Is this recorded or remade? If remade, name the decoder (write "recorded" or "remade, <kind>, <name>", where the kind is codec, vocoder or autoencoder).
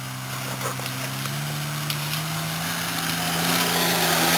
recorded